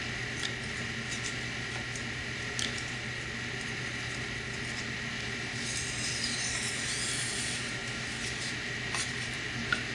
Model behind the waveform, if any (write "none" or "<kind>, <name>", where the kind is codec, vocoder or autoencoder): none